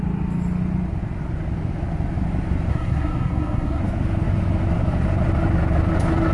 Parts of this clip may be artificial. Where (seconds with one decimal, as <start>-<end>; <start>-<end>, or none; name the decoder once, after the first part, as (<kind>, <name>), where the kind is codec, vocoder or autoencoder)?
2.7-3.8 (codec, SNAC)